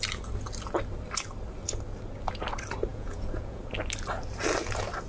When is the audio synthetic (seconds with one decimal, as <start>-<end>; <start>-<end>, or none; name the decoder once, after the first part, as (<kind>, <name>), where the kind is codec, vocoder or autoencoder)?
2.9-3.6 (vocoder, Vocos)